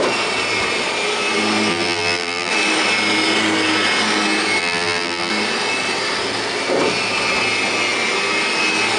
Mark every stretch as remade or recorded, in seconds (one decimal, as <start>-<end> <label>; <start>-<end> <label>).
0.0-1.7 recorded; 1.7-2.5 remade; 2.5-4.6 recorded; 4.6-5.3 remade; 5.3-9.0 recorded